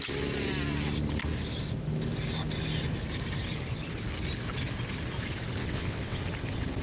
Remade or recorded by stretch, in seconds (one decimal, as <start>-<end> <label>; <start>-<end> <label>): 0.0-5.6 recorded; 5.6-6.2 remade; 6.2-6.8 recorded